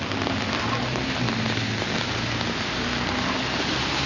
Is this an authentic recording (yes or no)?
yes